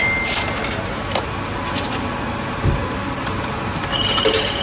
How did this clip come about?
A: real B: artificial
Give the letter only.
A